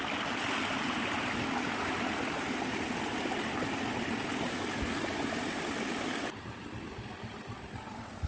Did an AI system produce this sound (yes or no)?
no